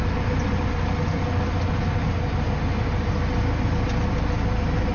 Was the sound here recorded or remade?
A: recorded